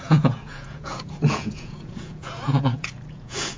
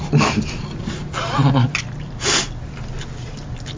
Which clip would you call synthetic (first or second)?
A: first